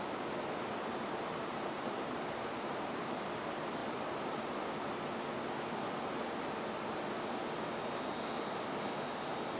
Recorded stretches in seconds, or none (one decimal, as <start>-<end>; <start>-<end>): 0.0-0.9; 3.1-3.8; 4.6-9.6